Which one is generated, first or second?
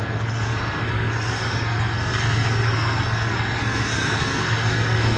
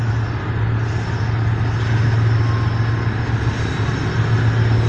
first